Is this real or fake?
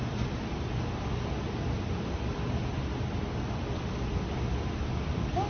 real